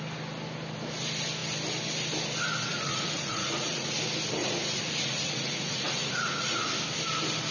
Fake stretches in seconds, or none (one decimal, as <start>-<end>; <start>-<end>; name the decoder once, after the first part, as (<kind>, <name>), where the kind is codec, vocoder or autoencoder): 2.7-4.0 (vocoder, Vocos); 4.4-6.7